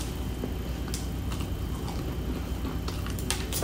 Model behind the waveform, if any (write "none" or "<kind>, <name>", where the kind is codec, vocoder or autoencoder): none